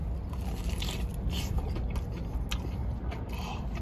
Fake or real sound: real